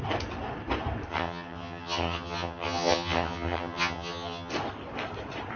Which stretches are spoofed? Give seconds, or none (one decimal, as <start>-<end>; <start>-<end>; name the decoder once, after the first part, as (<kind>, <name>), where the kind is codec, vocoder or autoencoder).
1.1-4.5 (vocoder, HiFi-GAN)